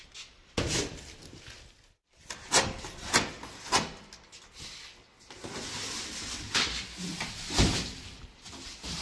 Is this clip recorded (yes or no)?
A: yes